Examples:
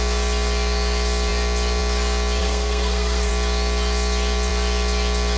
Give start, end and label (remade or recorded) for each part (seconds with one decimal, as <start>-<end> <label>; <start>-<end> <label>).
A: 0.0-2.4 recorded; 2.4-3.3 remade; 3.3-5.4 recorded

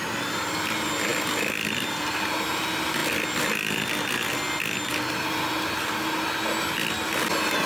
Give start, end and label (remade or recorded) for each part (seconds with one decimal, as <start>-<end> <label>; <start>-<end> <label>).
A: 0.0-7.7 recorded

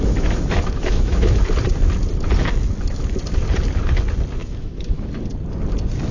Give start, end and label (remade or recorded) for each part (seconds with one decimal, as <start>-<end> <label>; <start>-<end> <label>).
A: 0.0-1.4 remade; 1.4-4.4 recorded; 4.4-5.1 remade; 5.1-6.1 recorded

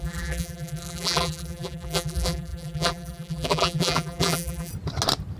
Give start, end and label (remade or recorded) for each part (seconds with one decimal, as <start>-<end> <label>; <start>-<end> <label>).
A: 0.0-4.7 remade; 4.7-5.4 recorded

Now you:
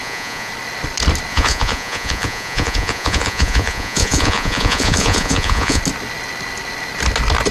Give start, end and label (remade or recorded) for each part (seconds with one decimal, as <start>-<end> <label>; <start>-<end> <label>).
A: 0.0-0.5 remade; 0.5-1.3 recorded; 1.3-5.8 remade; 5.8-7.5 recorded

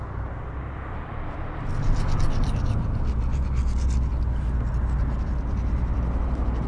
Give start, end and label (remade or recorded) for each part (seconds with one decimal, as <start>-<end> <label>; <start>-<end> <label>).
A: 0.0-6.7 recorded

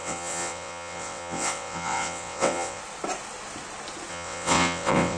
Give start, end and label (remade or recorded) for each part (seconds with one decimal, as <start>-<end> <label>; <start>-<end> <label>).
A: 0.0-2.8 remade; 2.8-4.1 recorded; 4.1-5.2 remade